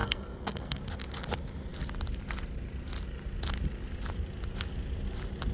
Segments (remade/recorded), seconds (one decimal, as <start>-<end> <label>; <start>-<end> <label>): 0.0-0.8 remade; 0.8-5.5 recorded